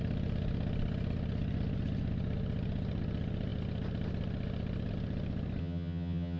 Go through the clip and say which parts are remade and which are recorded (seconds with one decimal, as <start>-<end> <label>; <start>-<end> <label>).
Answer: 0.0-5.6 recorded; 5.6-6.4 remade